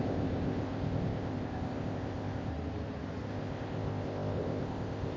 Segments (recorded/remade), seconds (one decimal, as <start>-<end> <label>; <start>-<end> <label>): 0.0-2.5 remade; 2.5-3.3 recorded; 3.3-5.2 remade